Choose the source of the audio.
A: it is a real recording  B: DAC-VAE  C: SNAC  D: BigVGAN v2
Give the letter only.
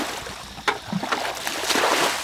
A